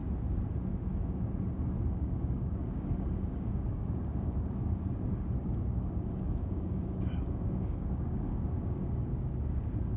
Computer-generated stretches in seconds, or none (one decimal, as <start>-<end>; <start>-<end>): 1.9-10.0